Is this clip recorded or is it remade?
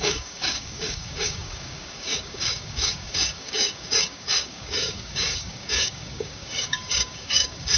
remade